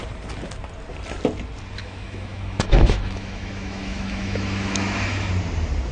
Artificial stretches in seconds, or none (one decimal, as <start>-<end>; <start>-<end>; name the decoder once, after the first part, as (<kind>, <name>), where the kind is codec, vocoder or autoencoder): 1.8-5.3 (autoencoder, DAC-VAE)